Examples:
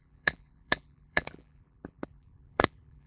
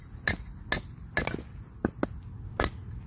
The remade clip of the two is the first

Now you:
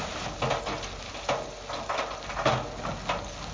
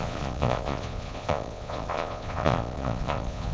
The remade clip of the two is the second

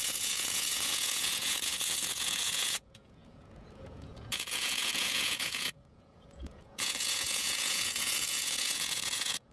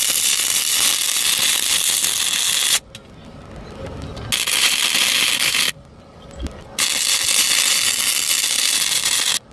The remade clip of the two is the first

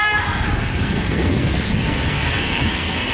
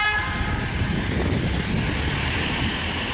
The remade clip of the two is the first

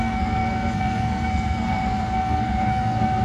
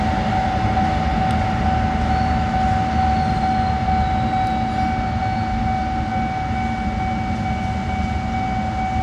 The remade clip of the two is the first